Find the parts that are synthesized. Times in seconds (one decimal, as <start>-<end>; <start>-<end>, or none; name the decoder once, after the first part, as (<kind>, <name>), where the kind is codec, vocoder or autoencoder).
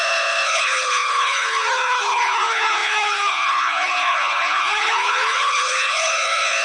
0.0-6.6 (codec, HILCodec)